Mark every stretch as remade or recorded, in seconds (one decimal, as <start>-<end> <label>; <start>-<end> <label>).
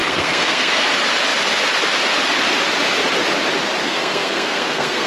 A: 0.0-0.9 remade; 0.9-3.8 recorded; 3.8-5.1 remade